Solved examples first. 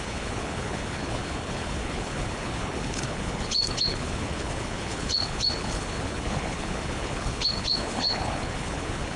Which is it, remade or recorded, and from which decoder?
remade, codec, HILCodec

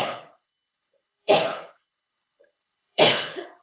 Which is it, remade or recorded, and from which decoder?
remade, codec, HILCodec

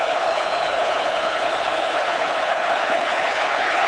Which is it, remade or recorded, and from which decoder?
remade, codec, HILCodec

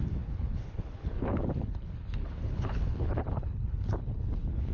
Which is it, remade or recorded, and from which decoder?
remade, codec, HILCodec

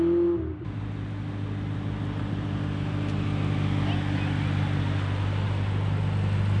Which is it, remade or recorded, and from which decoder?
recorded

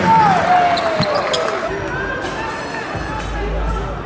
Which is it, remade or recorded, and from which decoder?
recorded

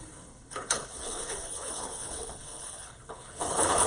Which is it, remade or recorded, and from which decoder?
remade, codec, HILCodec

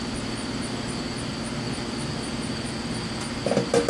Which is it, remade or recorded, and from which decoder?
recorded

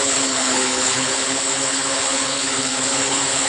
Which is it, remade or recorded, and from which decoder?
remade, codec, HILCodec